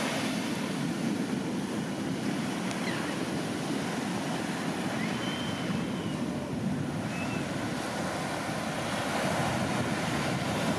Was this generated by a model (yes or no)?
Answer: no